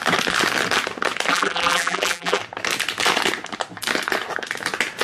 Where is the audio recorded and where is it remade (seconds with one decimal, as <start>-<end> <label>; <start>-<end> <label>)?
0.0-1.3 recorded; 1.3-2.4 remade; 2.4-5.0 recorded